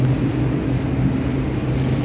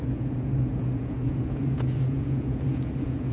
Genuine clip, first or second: first